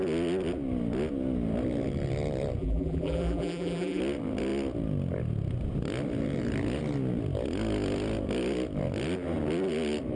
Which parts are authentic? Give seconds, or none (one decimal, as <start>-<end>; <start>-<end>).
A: 0.0-2.6; 4.0-10.2